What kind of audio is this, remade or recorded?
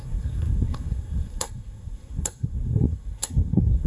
remade